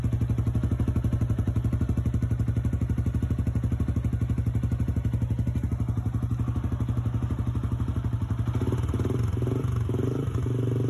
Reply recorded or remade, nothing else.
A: recorded